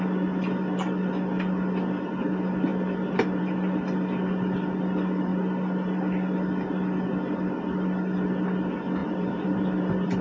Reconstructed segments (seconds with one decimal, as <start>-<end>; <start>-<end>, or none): 9.0-10.2